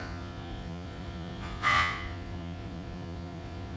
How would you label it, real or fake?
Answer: fake